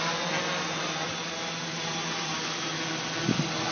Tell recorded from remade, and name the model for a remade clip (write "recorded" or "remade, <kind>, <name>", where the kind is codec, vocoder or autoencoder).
recorded